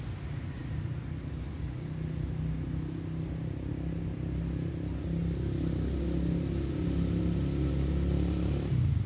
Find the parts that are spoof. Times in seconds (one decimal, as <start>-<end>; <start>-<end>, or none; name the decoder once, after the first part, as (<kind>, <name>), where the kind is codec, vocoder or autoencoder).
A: none

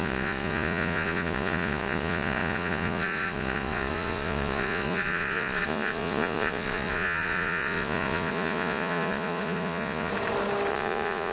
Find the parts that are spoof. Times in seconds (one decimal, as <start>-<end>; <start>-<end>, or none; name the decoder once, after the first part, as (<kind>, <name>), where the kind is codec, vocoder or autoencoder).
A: 0.0-10.1 (vocoder, Vocos); 10.7-11.3

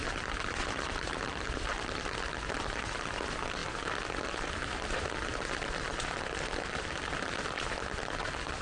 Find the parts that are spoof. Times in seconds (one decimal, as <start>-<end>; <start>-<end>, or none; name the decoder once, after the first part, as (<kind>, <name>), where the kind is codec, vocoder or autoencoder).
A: 0.0-0.8 (vocoder, BigVGAN v2)

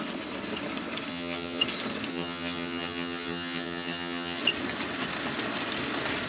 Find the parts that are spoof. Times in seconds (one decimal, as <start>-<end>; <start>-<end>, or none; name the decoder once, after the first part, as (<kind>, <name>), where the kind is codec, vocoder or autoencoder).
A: 1.1-1.6 (vocoder, HiFi-GAN); 2.1-4.4

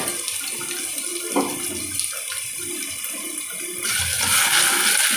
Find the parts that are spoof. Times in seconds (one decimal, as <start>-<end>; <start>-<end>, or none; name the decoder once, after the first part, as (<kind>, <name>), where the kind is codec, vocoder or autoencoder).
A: 1.1-4.2 (vocoder, BigVGAN v2)